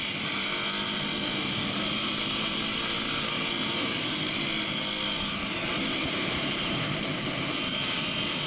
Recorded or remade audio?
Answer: recorded